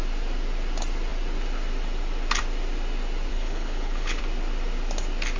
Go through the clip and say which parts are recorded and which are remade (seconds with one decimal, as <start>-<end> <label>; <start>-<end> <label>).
0.0-3.3 recorded; 3.3-4.2 remade; 4.2-5.4 recorded